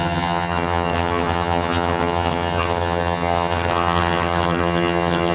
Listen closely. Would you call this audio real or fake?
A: fake